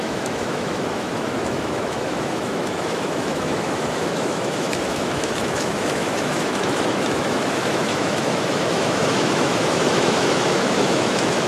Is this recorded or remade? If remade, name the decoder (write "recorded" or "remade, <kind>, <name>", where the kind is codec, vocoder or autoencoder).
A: remade, autoencoder, DAC-VAE